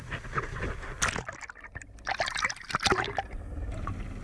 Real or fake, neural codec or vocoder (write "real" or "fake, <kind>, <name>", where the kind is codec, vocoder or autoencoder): real